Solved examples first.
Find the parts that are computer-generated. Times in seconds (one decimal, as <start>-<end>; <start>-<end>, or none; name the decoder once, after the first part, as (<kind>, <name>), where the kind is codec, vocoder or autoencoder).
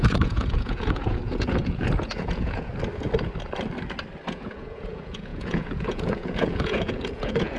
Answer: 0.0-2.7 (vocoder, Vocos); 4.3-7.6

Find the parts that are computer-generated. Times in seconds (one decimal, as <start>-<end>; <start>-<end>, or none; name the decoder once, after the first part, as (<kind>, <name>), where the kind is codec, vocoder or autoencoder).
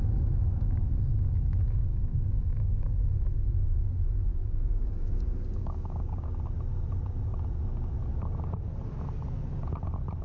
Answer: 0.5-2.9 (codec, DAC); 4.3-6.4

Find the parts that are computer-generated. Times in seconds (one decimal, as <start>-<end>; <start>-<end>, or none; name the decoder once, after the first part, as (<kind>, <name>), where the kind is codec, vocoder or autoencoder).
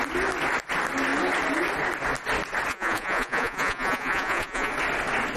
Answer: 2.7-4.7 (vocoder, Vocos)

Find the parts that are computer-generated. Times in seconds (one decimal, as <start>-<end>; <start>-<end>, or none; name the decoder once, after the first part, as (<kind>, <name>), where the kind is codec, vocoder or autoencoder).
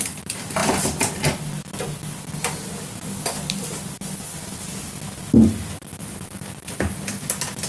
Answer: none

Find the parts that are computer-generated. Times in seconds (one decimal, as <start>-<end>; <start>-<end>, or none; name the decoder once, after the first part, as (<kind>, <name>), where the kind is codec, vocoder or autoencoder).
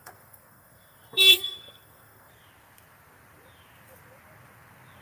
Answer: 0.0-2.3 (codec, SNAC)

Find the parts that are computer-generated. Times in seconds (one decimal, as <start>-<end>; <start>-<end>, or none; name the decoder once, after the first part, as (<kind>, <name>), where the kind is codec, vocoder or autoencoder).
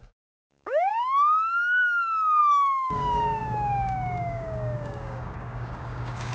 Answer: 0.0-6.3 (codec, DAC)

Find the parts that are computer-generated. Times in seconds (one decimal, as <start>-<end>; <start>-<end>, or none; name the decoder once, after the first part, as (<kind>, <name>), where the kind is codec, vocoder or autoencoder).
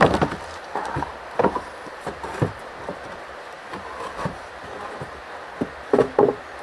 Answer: none